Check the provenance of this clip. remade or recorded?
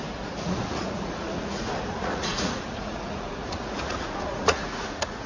remade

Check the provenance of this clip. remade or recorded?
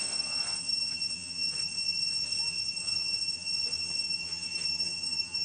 remade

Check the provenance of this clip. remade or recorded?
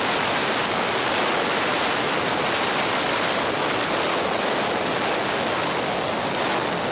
recorded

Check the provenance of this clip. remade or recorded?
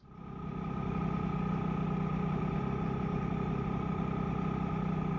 recorded